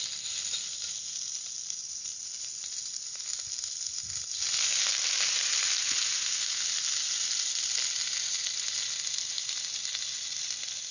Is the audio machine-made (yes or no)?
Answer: no